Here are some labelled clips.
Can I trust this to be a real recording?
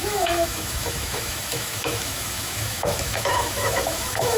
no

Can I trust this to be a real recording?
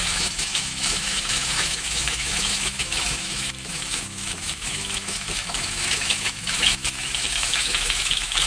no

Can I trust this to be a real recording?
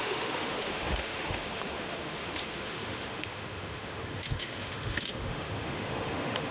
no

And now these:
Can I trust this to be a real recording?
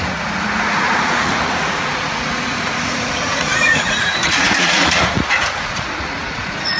no